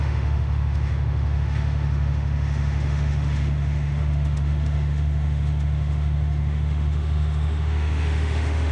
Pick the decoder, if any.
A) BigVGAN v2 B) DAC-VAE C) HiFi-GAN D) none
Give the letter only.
B